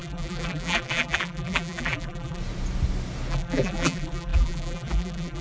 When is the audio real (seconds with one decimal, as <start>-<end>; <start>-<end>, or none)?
2.4-3.3